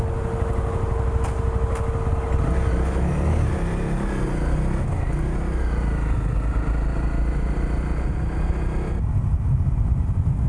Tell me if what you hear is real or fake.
real